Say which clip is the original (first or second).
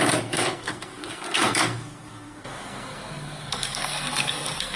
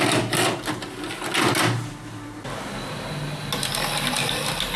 second